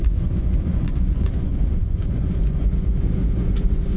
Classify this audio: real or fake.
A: fake